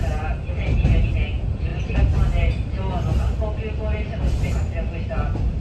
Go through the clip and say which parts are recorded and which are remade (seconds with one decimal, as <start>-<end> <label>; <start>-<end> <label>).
0.0-5.6 recorded